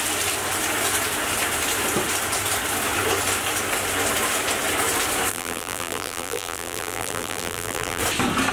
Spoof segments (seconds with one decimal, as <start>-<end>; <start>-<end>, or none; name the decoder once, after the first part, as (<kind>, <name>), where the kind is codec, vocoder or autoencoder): 5.3-8.0 (vocoder, BigVGAN v2)